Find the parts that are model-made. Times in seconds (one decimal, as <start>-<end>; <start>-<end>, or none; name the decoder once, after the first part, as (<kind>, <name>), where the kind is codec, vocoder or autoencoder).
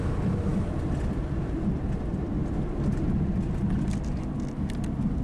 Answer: none